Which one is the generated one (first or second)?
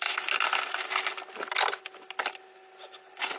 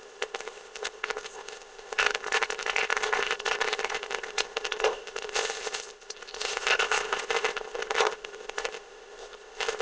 second